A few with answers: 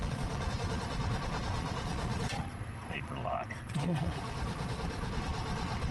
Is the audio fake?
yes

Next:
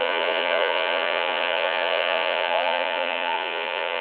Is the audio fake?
yes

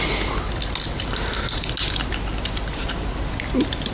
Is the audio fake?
no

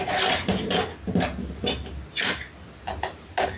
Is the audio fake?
no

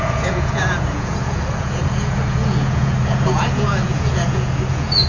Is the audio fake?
yes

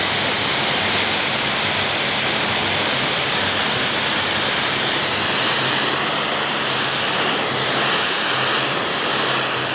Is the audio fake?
no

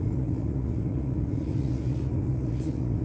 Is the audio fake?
yes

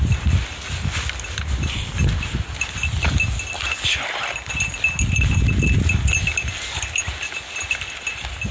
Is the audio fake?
no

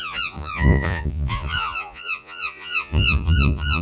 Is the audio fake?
yes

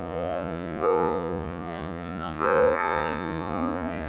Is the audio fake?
yes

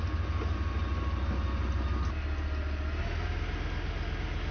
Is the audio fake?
no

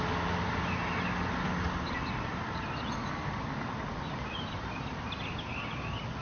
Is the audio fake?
no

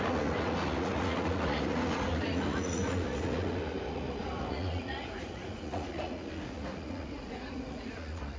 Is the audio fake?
yes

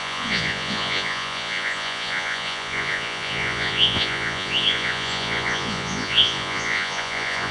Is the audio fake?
yes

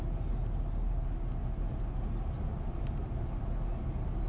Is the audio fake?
no